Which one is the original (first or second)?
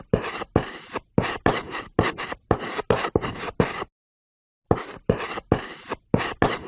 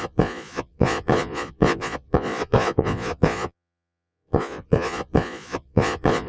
first